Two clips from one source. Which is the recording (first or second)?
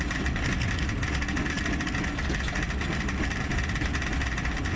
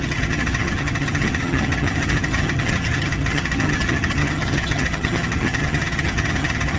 first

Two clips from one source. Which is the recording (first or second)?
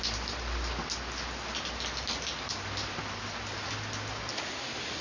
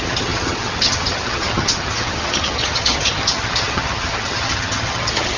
first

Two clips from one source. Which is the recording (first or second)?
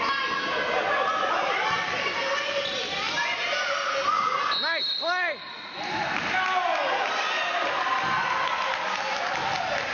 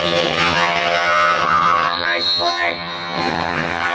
first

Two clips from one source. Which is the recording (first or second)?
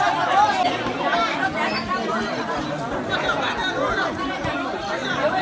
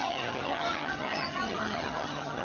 first